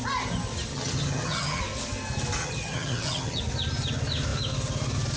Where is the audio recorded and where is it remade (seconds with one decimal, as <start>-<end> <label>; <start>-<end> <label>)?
0.0-0.7 recorded; 0.7-1.6 remade; 1.6-2.4 recorded; 2.4-3.4 remade; 3.4-5.2 recorded

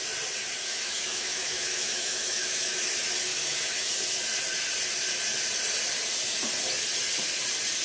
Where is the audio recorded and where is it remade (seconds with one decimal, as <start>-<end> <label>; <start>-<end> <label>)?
0.0-0.6 recorded; 0.6-2.9 remade; 2.9-3.3 recorded; 3.3-3.9 remade; 3.9-7.8 recorded

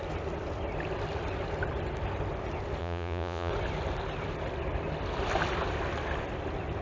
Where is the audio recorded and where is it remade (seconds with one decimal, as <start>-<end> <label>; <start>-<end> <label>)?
0.0-2.8 recorded; 2.8-3.5 remade; 3.5-6.8 recorded

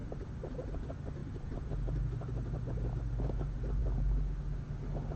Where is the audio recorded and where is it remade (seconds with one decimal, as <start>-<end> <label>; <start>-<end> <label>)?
0.0-5.2 recorded

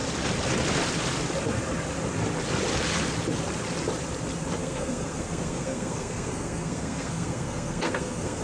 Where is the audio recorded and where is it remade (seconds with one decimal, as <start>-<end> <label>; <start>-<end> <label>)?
0.0-4.6 recorded; 4.6-8.4 remade

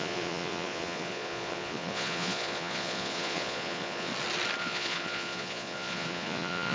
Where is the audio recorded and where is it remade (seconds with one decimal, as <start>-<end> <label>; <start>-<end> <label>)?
0.0-4.1 remade; 4.1-4.6 recorded; 4.6-6.7 remade

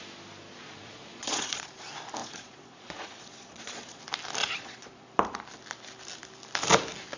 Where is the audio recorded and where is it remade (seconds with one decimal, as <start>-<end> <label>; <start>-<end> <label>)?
0.0-0.6 recorded; 0.6-1.7 remade; 1.7-2.2 recorded; 2.2-4.0 remade; 4.0-4.4 recorded; 4.4-4.9 remade; 4.9-7.2 recorded

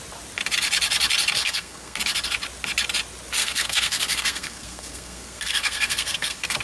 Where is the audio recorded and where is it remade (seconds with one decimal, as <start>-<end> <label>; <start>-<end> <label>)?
0.0-1.4 recorded; 1.4-2.0 remade; 2.0-3.4 recorded; 3.4-6.6 remade